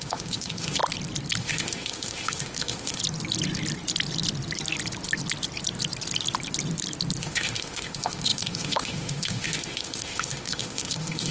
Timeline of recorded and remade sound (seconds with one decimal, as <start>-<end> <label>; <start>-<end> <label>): 0.0-0.8 remade; 0.8-1.4 recorded; 1.4-3.0 remade; 3.0-7.2 recorded; 7.2-11.3 remade